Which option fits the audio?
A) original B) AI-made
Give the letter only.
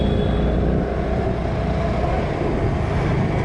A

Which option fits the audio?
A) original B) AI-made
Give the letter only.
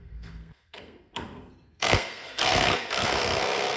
B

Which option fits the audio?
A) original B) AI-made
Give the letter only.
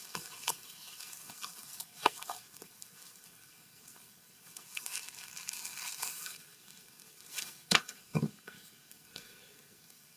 B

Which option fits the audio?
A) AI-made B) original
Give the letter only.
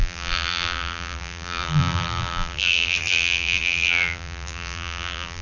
A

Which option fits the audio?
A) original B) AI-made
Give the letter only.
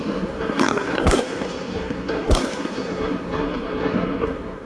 B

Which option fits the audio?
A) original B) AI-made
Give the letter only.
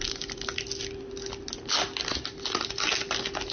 A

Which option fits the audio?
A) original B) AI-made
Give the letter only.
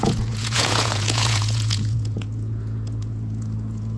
B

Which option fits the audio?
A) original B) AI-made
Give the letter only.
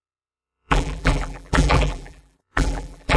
B